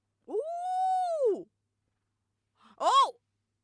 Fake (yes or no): no